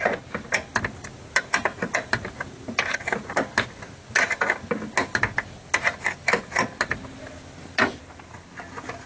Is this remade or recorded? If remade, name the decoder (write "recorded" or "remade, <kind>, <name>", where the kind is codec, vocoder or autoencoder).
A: recorded